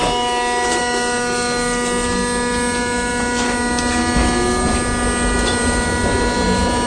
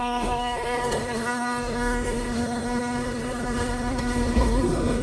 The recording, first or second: first